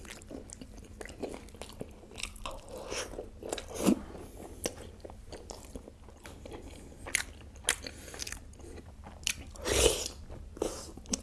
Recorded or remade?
recorded